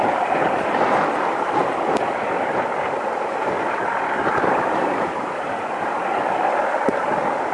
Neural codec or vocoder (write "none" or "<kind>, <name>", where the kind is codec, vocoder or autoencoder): vocoder, BigVGAN v2